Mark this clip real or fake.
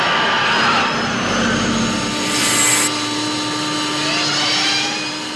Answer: real